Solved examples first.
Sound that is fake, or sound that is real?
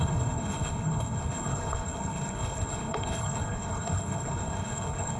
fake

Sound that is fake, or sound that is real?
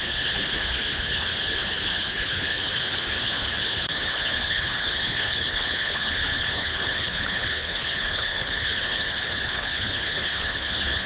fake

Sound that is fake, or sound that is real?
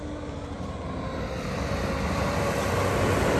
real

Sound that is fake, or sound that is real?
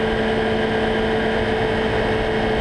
real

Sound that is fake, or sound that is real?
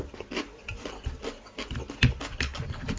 real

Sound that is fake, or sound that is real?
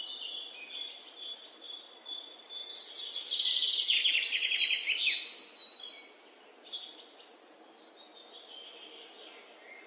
real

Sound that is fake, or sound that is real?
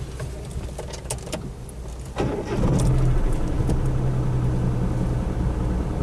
real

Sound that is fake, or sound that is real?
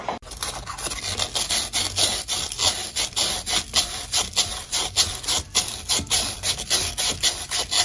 real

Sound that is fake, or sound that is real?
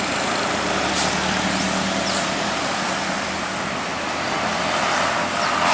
real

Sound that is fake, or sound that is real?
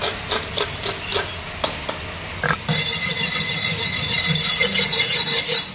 real